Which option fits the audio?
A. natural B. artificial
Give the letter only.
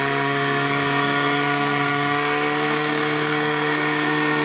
B